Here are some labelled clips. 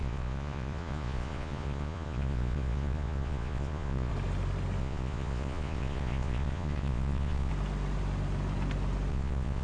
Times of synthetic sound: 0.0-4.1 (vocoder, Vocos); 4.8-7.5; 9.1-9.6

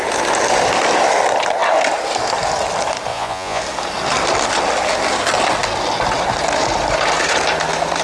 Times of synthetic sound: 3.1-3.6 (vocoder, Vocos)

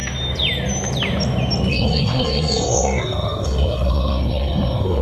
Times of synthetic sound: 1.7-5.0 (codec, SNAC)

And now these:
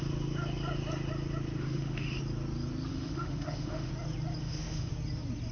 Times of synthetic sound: 1.6-2.2 (autoencoder, DAC-VAE); 2.9-3.9; 4.4-4.9

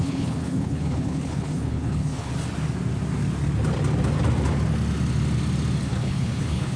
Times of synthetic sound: 0.0-2.3 (codec, HILCodec); 5.8-6.8